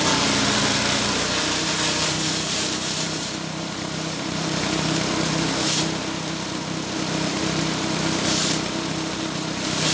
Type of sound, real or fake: fake